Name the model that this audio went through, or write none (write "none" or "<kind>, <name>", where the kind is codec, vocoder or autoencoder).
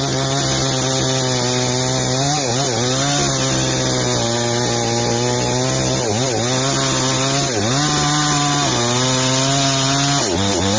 none